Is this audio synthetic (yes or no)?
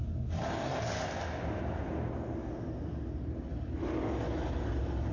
no